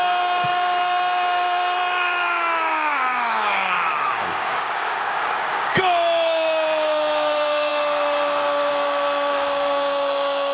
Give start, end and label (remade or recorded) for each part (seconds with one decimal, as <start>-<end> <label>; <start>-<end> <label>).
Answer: 0.0-10.5 remade